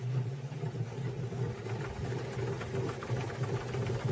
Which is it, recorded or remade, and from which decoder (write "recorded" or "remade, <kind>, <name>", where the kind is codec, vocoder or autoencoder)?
recorded